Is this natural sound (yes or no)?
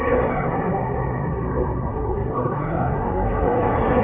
no